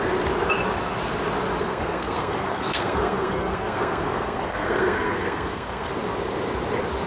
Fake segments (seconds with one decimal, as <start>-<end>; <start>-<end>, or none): 1.6-5.9